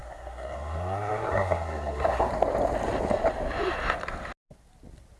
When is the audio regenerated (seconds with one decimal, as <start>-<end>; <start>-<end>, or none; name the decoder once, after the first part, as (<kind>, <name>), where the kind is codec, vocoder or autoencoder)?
0.0-2.3 (codec, SNAC)